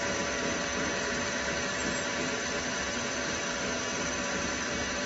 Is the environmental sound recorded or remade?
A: remade